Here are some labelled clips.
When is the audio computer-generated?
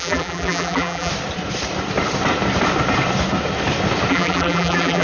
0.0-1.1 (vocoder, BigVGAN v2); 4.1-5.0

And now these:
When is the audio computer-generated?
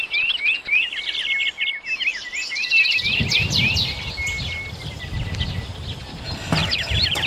6.6-7.3 (vocoder, BigVGAN v2)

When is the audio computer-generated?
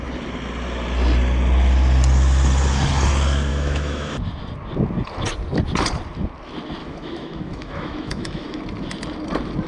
3.5-4.1 (autoencoder, DAC-VAE); 6.8-8.6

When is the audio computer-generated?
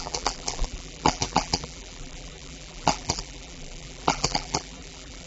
0.0-5.3 (vocoder, BigVGAN v2)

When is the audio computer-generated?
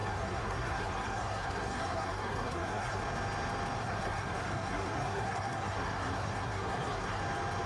0.0-3.0 (codec, SNAC); 3.8-7.2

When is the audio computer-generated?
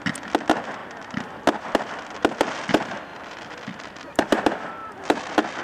0.8-1.4 (vocoder, BigVGAN v2); 3.1-4.2; 4.8-5.6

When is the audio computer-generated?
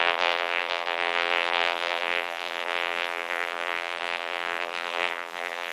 0.0-5.7 (vocoder, BigVGAN v2)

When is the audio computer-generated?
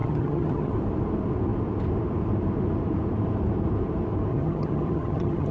0.0-0.7 (vocoder, HiFi-GAN); 4.3-5.5